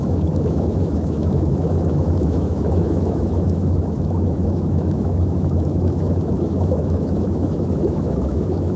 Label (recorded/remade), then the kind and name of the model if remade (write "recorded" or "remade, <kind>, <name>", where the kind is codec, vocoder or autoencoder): remade, autoencoder, DAC-VAE